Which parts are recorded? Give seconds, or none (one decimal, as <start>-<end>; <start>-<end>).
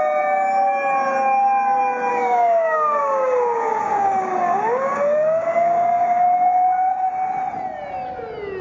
0.0-2.1; 7.1-8.6